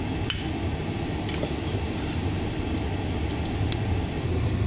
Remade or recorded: recorded